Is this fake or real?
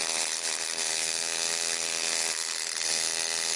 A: real